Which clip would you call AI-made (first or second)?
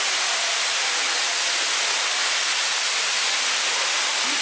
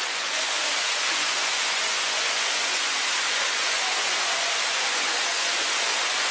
second